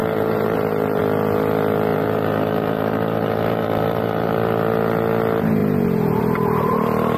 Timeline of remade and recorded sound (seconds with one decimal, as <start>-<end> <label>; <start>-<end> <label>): 0.0-1.0 remade; 1.0-1.9 recorded; 1.9-4.3 remade; 4.3-7.2 recorded